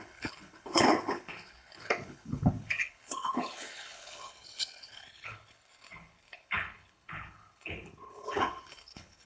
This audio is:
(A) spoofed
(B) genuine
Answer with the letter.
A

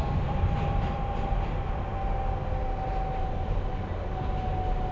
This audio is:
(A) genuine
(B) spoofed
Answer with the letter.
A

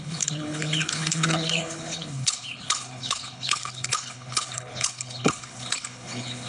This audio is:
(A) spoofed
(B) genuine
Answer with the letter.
A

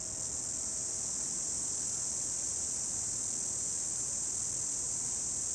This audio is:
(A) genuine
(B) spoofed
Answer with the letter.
A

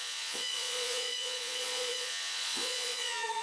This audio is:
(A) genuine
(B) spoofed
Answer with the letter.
B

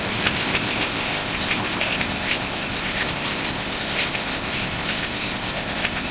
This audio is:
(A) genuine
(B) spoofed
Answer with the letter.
B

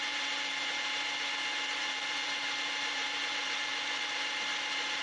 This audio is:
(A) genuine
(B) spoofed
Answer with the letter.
B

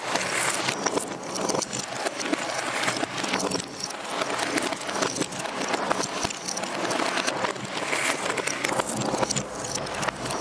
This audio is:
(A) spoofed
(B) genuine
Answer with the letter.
A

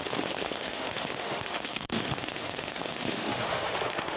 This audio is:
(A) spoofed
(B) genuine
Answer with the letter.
A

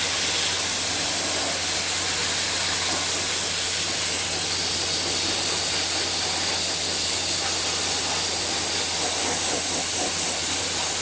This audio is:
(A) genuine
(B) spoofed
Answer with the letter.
A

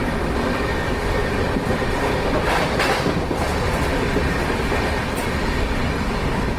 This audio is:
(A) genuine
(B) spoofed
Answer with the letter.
A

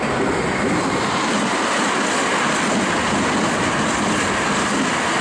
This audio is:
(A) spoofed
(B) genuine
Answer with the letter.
B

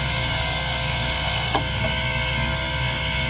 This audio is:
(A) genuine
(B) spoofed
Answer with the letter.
B